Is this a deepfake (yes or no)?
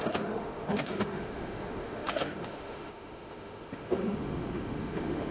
yes